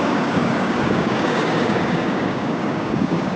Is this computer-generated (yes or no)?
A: yes